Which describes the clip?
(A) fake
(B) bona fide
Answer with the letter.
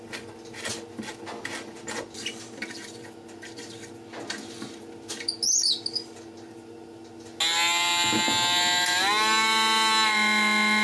B